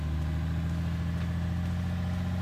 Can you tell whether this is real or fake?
real